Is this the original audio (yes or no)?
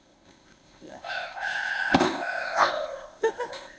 no